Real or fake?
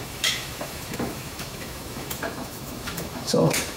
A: fake